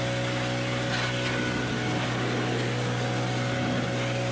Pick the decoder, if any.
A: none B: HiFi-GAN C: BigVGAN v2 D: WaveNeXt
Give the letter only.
A